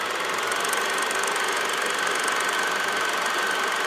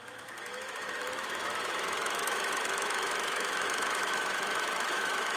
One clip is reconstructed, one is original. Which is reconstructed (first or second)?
second